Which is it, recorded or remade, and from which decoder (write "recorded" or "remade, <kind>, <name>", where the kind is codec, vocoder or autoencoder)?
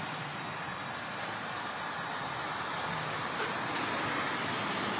recorded